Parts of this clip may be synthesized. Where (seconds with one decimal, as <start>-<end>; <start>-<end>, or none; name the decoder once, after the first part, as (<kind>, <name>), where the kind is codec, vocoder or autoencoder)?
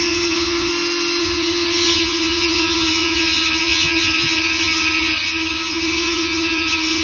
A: 0.0-0.7 (vocoder, HiFi-GAN); 1.2-7.0